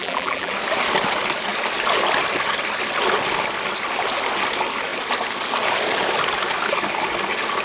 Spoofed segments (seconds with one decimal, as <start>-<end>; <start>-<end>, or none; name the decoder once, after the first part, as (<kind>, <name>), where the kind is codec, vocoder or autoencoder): 0.0-0.5 (vocoder, BigVGAN v2)